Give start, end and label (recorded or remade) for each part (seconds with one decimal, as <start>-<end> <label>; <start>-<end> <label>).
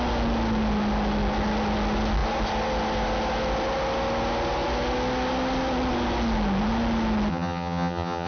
0.0-7.3 recorded; 7.3-8.3 remade